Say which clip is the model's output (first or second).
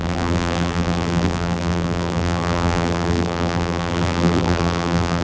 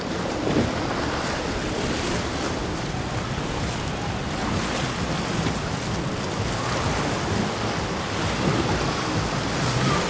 first